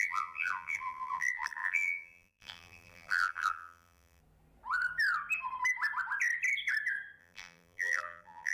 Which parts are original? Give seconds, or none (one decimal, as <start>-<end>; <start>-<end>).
4.2-7.2